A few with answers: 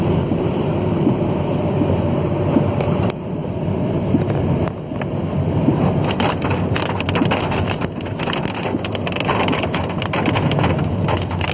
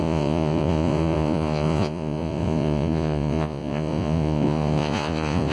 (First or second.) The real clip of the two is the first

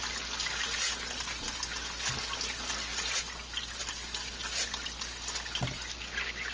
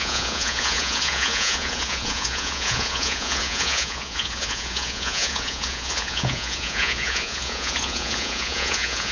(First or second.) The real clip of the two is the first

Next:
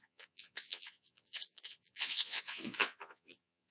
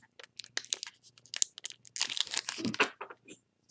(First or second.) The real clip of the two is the second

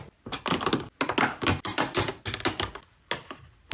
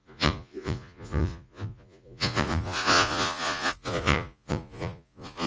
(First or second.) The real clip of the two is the first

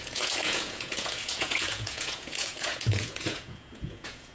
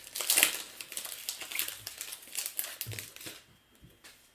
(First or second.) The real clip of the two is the second